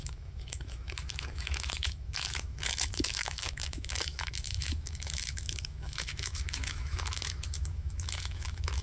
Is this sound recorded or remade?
remade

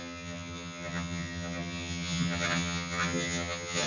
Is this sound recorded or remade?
remade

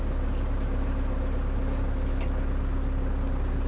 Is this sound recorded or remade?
recorded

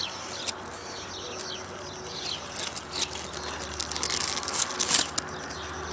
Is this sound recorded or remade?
recorded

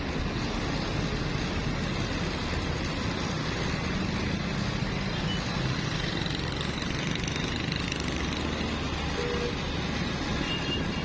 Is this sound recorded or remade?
recorded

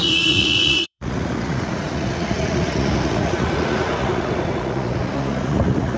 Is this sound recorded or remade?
remade